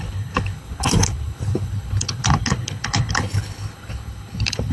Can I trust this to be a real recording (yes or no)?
no